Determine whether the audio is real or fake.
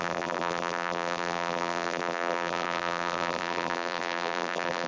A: fake